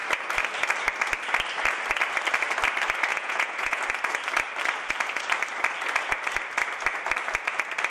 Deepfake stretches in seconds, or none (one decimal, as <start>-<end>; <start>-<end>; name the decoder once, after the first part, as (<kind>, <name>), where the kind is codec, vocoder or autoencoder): 3.1-3.8 (vocoder, Vocos)